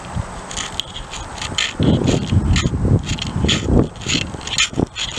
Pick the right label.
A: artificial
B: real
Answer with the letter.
B